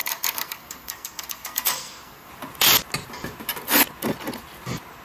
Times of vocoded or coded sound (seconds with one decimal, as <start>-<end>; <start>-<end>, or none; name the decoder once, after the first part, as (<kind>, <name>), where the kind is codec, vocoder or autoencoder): 0.0-2.3 (codec, SNAC)